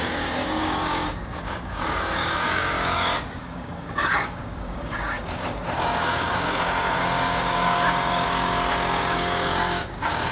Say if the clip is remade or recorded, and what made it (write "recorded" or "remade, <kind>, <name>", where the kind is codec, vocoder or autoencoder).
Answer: remade, codec, DAC